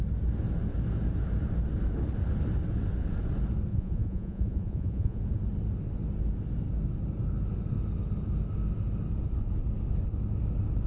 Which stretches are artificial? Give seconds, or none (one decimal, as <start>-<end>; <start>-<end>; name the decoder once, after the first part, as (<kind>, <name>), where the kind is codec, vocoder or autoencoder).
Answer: 3.7-5.2 (vocoder, Vocos)